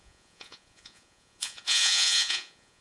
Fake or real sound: fake